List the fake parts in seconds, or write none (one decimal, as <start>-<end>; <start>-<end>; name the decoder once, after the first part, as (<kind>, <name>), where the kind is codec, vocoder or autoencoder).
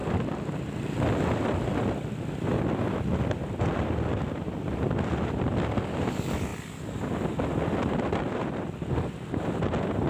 none